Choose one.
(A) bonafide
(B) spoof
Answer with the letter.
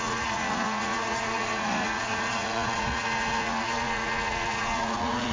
B